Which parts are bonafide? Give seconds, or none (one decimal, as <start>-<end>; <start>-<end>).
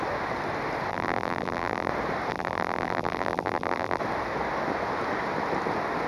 0.0-0.9; 1.9-2.3; 4.0-6.1